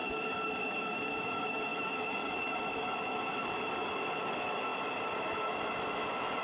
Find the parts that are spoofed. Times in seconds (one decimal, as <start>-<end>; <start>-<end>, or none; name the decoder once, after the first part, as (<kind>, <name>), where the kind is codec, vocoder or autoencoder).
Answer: 0.0-6.4 (autoencoder, DAC-VAE)